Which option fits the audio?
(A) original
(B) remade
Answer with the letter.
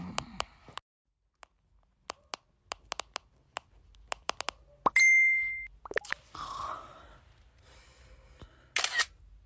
A